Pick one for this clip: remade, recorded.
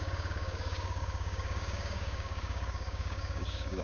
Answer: remade